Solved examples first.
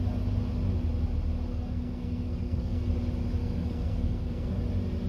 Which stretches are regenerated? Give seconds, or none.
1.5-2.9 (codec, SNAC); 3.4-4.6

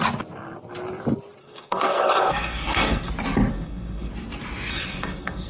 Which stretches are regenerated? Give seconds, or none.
1.4-3.1 (codec, SNAC); 3.5-4.1; 4.7-5.5

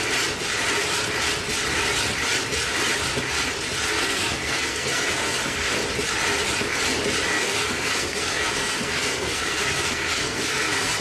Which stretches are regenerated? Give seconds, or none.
3.9-5.8 (codec, SNAC); 7.3-11.0